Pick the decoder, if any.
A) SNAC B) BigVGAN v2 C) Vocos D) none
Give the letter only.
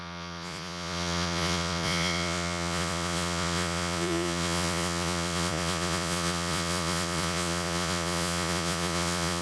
C